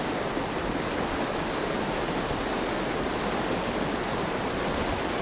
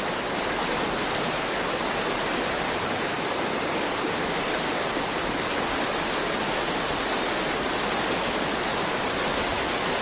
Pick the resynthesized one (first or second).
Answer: first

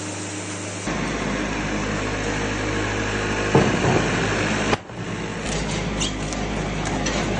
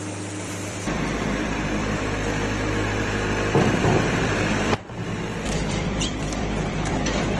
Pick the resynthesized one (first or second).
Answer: second